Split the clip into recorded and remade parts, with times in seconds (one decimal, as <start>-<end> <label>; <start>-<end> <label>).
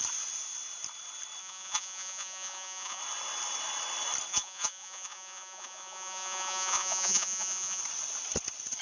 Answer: 0.0-1.4 recorded; 1.4-3.0 remade; 3.0-4.3 recorded; 4.3-7.8 remade; 7.8-8.8 recorded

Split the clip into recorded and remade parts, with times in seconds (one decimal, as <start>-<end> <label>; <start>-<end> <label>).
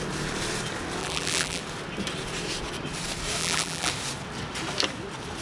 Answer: 0.0-1.0 recorded; 1.0-1.6 remade; 1.6-3.4 recorded; 3.4-3.9 remade; 3.9-5.4 recorded